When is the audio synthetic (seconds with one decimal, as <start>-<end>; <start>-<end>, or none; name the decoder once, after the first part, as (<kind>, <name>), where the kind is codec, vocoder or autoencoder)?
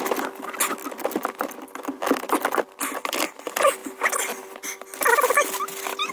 none